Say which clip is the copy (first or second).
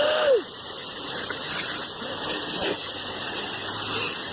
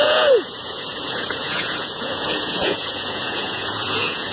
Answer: second